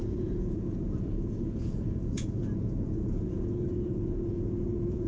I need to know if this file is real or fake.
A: fake